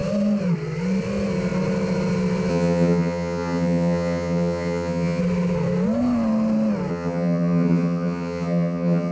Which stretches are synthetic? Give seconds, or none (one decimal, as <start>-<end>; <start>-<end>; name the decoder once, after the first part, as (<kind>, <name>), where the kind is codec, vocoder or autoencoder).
2.5-5.2 (vocoder, HiFi-GAN); 6.9-9.1